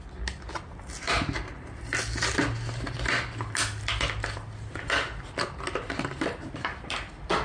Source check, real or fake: real